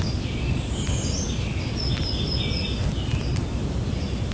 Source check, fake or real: real